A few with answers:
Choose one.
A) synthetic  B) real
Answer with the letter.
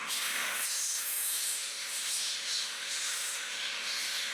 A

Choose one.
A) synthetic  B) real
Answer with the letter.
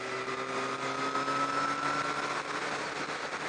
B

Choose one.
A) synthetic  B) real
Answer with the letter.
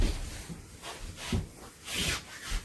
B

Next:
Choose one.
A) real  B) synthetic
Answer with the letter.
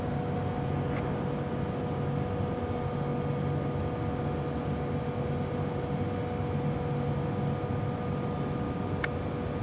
A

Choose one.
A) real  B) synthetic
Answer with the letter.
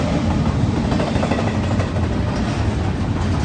A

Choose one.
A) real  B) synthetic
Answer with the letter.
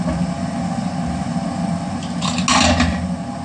A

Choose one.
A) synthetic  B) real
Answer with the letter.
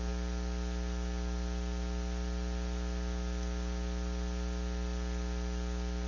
B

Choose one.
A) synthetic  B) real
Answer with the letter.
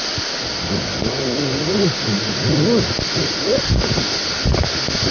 B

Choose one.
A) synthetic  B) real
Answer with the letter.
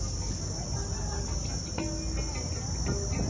B